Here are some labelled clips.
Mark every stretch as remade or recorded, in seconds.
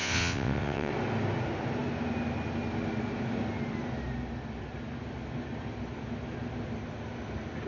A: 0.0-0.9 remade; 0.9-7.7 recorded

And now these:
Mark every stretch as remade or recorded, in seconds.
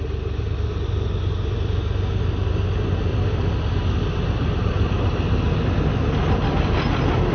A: 0.0-3.1 recorded; 3.1-6.0 remade; 6.0-7.3 recorded